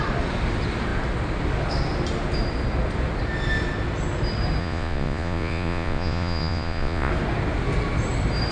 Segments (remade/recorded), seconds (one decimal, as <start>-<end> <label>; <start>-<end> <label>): 0.0-4.6 recorded; 4.6-7.1 remade; 7.1-8.5 recorded